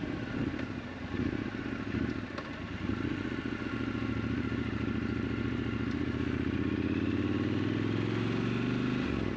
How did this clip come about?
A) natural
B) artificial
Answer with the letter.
A